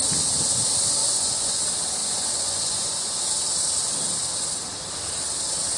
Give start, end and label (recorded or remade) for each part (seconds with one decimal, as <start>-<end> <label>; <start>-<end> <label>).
0.0-1.0 recorded; 1.0-1.6 remade; 1.6-2.0 recorded; 2.0-3.2 remade; 3.2-5.8 recorded